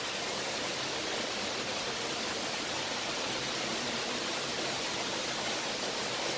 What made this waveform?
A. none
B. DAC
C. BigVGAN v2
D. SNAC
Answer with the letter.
A